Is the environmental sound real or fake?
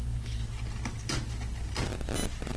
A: real